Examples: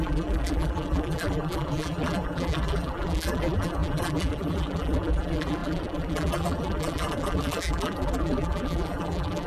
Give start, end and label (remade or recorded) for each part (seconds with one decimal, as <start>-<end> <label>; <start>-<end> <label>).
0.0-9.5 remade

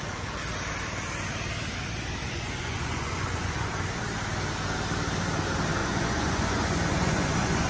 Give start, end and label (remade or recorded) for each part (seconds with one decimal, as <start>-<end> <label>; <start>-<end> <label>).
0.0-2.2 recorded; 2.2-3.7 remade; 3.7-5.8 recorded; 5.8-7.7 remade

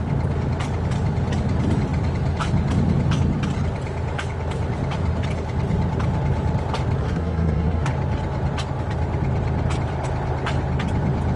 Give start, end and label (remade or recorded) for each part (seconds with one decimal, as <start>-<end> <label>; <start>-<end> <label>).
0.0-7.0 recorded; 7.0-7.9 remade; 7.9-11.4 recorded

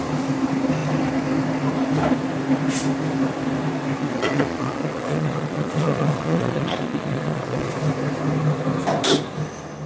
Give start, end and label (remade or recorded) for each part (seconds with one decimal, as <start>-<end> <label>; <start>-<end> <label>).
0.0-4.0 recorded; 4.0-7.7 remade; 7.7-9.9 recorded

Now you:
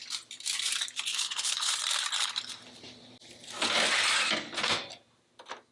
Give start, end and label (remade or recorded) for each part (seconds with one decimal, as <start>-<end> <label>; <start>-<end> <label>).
0.0-1.1 recorded; 1.1-1.7 remade; 1.7-5.7 recorded